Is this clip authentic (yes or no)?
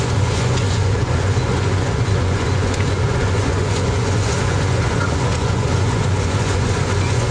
no